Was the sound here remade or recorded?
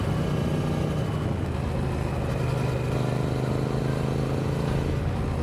recorded